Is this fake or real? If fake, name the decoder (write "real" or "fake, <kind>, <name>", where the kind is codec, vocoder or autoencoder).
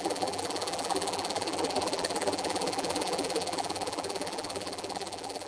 fake, vocoder, BigVGAN v2